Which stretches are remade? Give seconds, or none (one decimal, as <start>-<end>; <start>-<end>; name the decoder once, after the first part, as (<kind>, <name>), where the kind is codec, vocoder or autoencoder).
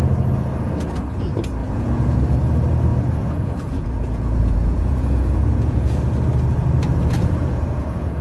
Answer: 1.6-2.2 (vocoder, Vocos); 2.9-6.0; 7.4-8.2